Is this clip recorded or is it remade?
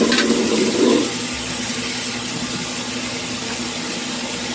recorded